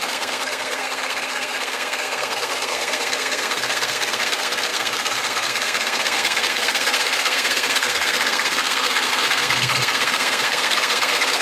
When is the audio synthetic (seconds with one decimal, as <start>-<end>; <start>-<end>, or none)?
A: 0.0-11.4